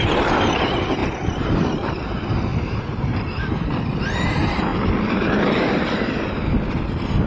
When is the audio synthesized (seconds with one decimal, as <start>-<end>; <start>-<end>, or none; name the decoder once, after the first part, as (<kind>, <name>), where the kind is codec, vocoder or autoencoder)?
0.0-1.0 (vocoder, BigVGAN v2); 2.1-2.5; 3.3-7.3